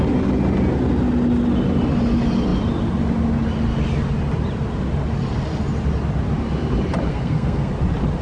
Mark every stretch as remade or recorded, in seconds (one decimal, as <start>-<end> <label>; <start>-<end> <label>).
0.0-7.1 recorded; 7.1-7.7 remade; 7.7-8.2 recorded